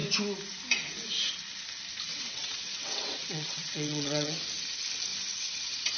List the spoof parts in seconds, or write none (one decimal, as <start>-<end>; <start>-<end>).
2.1-4.4; 5.1-6.0